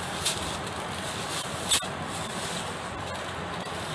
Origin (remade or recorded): recorded